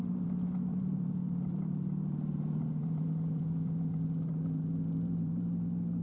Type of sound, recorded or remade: remade